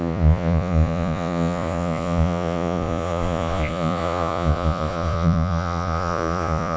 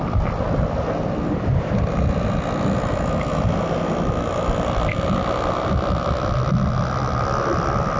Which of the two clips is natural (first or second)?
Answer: second